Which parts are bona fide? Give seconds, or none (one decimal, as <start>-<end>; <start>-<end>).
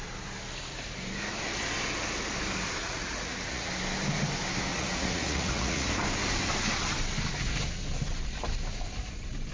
0.0-2.8; 3.7-4.7; 5.9-9.5